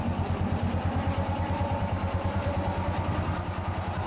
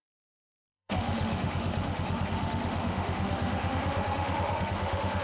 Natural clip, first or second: first